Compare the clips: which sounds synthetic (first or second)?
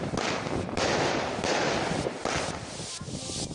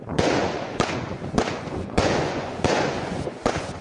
second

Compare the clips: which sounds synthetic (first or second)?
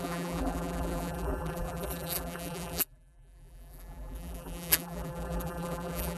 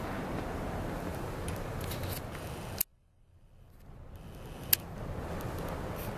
first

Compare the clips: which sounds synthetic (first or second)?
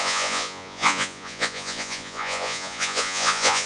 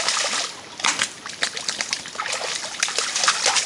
first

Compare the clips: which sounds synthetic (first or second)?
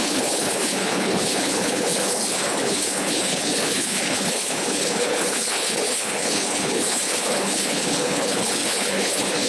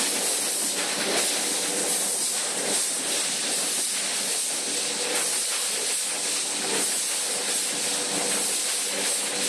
first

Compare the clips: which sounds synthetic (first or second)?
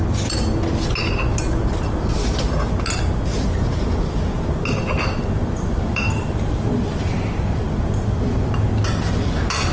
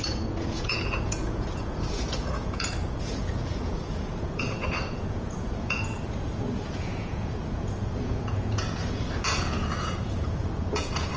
second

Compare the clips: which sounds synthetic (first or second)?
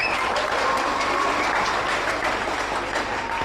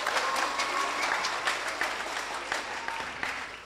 first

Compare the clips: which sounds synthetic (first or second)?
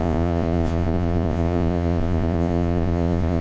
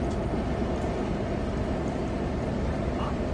first